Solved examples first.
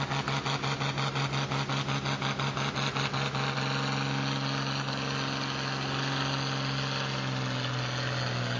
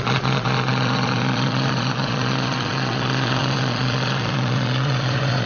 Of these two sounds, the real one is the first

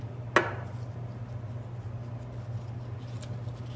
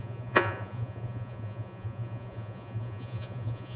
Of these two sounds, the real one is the first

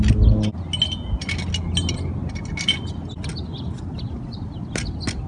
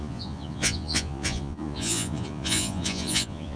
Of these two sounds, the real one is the first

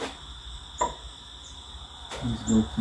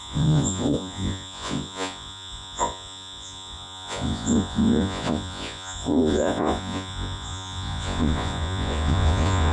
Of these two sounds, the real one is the first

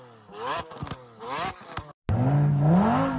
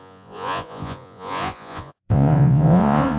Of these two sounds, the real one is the first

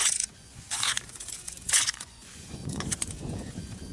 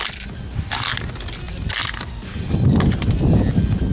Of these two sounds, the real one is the second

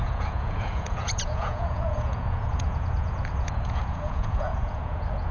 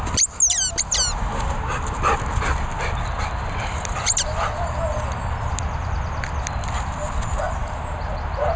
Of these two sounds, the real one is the second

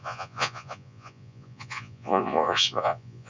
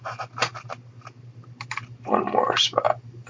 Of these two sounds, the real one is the second